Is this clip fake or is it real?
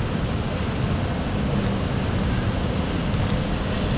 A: real